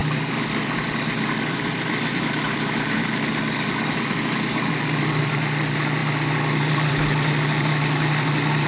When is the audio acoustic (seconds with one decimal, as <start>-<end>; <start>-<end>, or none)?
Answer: 0.0-8.7